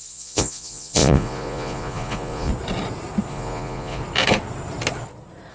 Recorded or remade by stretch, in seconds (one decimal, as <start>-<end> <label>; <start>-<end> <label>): 0.0-2.5 remade; 2.5-3.3 recorded; 3.3-4.0 remade; 4.0-5.5 recorded